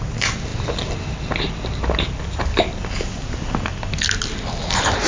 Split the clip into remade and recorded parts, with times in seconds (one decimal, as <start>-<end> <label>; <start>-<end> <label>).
0.0-5.1 recorded